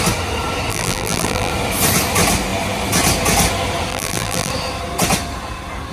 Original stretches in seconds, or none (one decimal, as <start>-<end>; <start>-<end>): 0.0-0.7; 1.5-3.9; 4.5-5.9